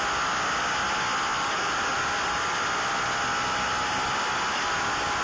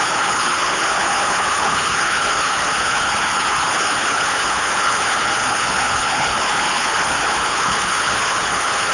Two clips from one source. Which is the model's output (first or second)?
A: second